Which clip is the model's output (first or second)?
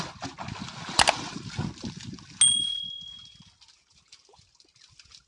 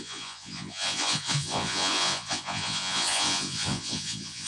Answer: second